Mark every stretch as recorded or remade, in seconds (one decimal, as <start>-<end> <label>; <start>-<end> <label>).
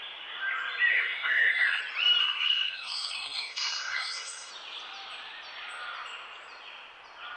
0.0-0.9 recorded; 0.9-1.8 remade; 1.8-2.2 recorded; 2.2-4.5 remade; 4.5-7.4 recorded